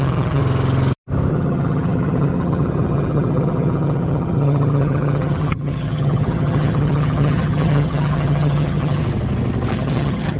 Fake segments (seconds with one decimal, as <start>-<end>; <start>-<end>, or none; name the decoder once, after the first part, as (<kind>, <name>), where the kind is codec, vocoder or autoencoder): 0.0-0.4 (vocoder, HiFi-GAN); 1.3-9.0; 9.7-10.4